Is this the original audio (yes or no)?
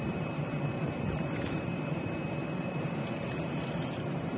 no